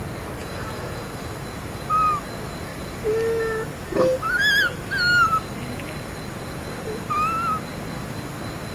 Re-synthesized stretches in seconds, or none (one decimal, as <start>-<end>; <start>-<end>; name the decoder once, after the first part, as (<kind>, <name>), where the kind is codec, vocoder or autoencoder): 0.4-1.1 (vocoder, Vocos)

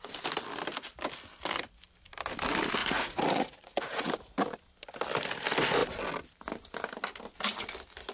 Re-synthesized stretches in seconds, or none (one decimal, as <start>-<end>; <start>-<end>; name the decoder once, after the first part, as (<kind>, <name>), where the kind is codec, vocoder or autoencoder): 2.8-4.1 (vocoder, Vocos)

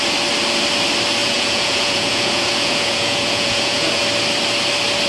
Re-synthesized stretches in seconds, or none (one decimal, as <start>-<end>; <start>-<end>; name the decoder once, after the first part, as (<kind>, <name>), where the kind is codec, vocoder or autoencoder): 1.2-4.0 (vocoder, Vocos)

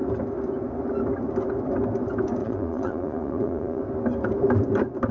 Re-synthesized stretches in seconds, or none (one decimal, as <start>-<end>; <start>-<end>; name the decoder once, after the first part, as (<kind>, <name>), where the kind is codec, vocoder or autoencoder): 2.4-3.8 (vocoder, Vocos)

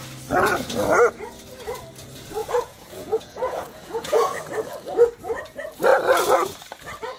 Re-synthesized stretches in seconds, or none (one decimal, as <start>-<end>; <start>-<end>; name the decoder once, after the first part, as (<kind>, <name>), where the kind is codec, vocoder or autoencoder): 2.4-4.4 (vocoder, Vocos)